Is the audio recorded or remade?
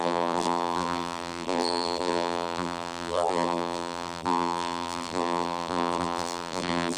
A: remade